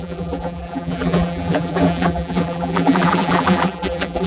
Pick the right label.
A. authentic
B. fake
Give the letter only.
B